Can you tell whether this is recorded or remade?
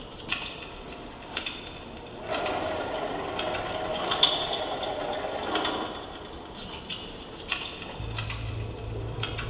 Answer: recorded